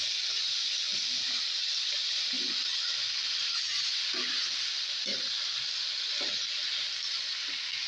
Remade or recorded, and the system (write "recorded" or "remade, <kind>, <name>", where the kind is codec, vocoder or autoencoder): recorded